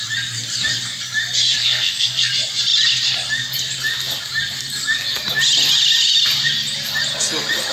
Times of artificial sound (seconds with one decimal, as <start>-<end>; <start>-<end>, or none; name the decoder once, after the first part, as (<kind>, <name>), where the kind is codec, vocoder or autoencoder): 1.6-2.3 (codec, SNAC)